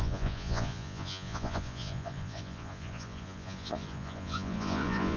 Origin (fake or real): fake